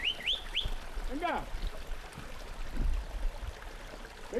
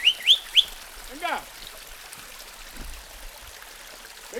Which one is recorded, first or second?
second